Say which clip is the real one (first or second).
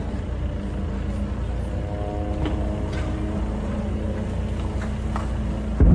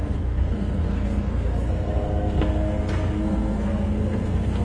first